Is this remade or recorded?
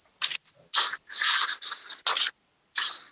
recorded